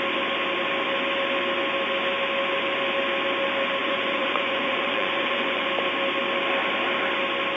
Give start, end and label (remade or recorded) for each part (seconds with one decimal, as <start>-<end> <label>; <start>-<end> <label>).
0.0-3.8 recorded; 3.8-5.7 remade; 5.7-7.6 recorded

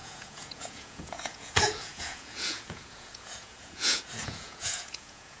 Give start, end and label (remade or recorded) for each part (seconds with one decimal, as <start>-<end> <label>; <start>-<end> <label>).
0.0-5.4 remade

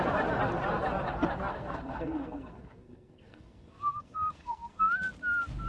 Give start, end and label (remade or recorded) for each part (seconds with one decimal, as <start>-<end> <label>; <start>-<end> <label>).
0.0-1.5 recorded; 1.5-4.9 remade; 4.9-5.7 recorded

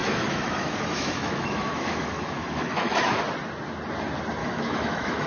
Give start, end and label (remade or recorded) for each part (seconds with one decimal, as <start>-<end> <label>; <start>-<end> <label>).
0.0-3.2 remade; 3.2-4.4 recorded; 4.4-5.3 remade

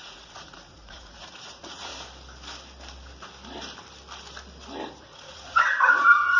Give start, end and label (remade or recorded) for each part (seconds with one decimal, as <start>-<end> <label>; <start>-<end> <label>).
0.0-1.9 remade; 1.9-5.0 recorded; 5.0-6.4 remade

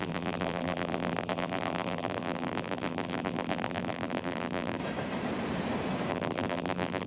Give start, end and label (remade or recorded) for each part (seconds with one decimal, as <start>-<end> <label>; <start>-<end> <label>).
0.0-4.8 remade; 4.8-6.1 recorded; 6.1-7.1 remade